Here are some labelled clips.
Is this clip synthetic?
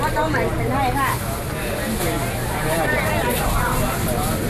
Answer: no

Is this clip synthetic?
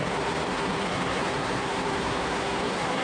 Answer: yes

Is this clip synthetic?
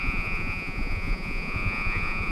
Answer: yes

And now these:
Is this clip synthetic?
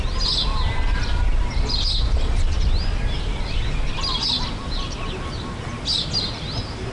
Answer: no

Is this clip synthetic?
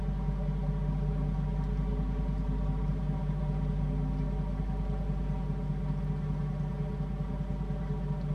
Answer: no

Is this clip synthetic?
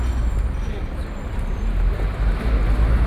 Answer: no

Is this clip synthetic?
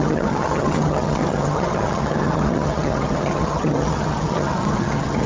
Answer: yes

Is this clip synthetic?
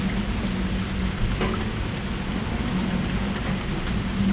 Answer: no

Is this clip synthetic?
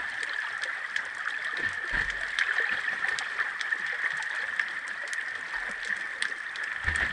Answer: no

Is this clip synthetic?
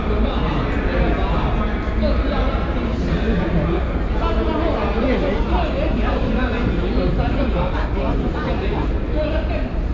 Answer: no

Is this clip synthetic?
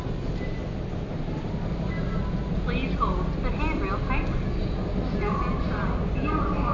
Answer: no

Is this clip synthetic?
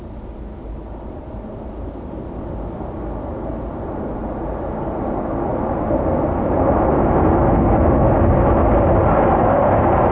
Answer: no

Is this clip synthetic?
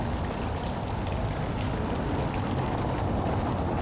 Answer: no